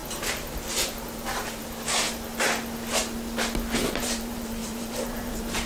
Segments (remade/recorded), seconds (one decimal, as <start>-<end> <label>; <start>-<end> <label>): 0.0-0.9 recorded; 0.9-1.6 remade; 1.6-3.8 recorded; 3.8-5.7 remade